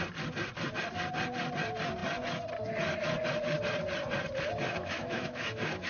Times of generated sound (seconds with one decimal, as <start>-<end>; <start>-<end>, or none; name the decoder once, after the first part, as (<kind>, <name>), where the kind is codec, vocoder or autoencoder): 4.8-5.9 (autoencoder, DAC-VAE)